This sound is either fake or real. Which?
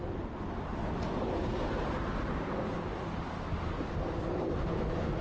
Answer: real